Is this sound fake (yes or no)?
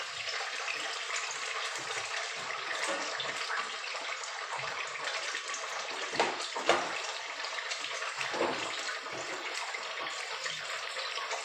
no